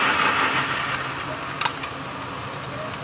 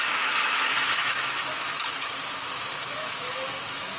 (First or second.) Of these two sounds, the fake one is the second